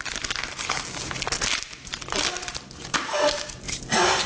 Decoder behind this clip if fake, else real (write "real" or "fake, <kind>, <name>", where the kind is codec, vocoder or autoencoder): real